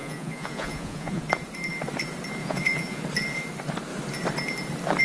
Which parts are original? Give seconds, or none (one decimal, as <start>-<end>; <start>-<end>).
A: 1.2-2.4; 3.0-5.0